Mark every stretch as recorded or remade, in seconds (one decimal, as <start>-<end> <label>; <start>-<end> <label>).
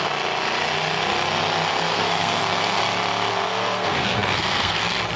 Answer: 0.0-1.9 recorded; 1.9-2.8 remade; 2.8-3.3 recorded; 3.3-4.8 remade; 4.8-5.2 recorded